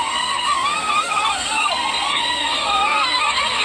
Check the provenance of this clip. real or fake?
fake